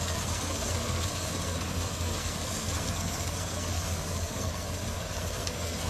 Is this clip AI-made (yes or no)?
yes